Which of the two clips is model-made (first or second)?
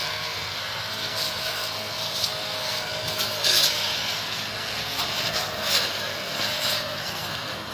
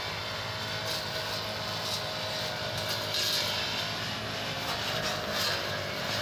first